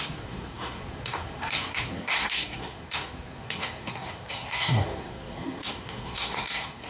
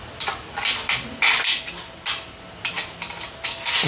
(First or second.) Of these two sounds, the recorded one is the second